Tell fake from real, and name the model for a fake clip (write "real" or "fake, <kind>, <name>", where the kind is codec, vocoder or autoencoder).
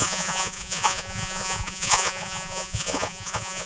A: fake, vocoder, Vocos